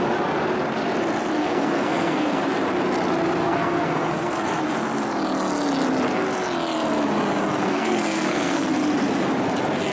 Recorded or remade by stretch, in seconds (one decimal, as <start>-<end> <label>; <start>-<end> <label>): 0.0-1.4 recorded; 1.4-2.4 remade; 2.4-3.4 recorded; 3.4-4.6 remade; 4.6-7.6 recorded; 7.6-8.7 remade; 8.7-9.9 recorded